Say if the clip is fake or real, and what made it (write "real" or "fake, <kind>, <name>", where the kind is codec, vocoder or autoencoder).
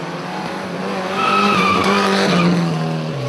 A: real